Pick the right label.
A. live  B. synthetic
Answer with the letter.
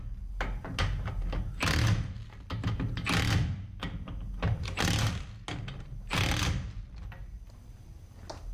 A